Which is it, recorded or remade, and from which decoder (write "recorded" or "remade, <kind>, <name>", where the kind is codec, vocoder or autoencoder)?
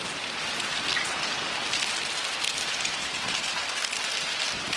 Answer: recorded